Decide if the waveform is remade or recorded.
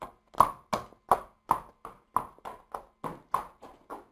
recorded